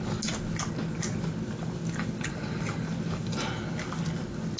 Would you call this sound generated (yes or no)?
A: no